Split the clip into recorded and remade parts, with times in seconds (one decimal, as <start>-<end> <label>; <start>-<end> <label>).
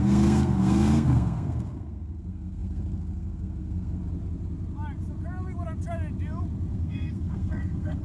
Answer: 0.0-4.0 remade; 4.0-6.7 recorded; 6.7-8.0 remade